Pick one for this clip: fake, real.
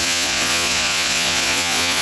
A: fake